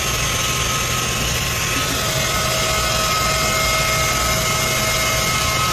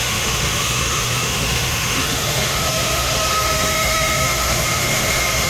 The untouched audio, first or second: first